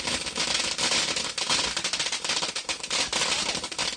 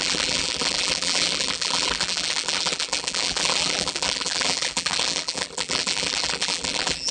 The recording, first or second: first